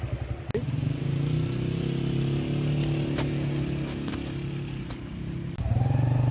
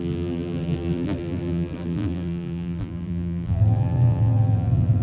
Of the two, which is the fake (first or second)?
second